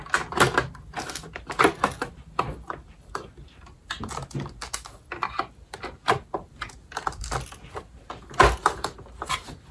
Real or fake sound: real